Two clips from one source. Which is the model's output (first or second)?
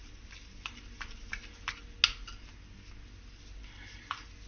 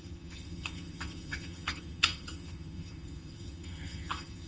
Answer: second